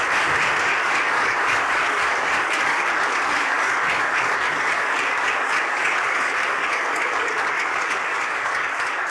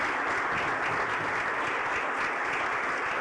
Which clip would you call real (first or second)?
second